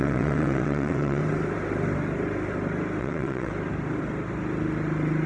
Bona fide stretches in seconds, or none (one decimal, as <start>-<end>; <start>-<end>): 1.2-3.0; 3.5-5.3